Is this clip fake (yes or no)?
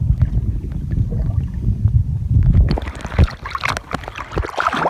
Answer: no